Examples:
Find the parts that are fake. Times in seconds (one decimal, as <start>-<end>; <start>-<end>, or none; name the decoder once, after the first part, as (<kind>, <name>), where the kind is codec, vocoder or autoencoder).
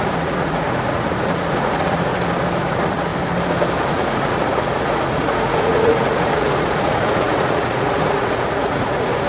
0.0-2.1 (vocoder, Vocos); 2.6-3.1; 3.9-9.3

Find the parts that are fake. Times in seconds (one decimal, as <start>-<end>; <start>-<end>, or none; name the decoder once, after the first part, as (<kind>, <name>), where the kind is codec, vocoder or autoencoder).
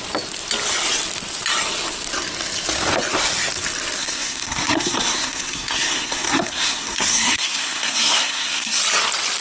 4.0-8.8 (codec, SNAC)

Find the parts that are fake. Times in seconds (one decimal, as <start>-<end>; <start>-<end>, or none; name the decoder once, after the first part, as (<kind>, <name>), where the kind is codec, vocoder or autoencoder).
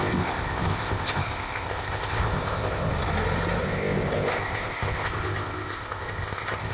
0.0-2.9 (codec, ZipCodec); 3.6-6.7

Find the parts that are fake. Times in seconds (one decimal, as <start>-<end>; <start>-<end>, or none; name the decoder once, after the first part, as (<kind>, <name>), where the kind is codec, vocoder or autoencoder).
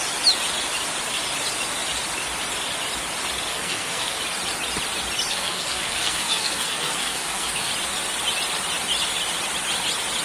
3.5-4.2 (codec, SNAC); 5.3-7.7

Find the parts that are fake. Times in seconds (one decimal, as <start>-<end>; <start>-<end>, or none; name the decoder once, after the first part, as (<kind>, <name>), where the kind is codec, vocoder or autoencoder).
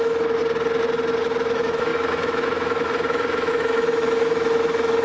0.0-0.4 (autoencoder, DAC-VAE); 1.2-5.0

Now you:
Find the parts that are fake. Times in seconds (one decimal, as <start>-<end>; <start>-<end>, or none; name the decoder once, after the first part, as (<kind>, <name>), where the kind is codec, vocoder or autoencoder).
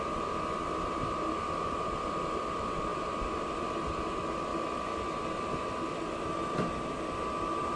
0.0-0.6 (vocoder, BigVGAN v2); 1.3-4.5; 5.0-7.8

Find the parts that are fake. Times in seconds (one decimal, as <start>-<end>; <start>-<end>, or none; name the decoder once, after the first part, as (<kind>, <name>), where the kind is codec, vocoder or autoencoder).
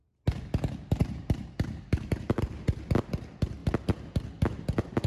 1.0-2.5 (vocoder, BigVGAN v2)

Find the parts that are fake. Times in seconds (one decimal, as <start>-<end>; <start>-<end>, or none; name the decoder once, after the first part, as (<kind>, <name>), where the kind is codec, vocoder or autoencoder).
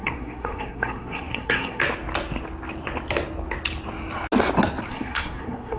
0.0-1.8 (codec, SNAC); 4.9-5.8